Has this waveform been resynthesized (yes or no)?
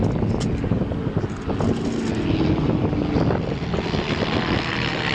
no